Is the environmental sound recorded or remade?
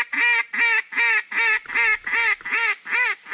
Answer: recorded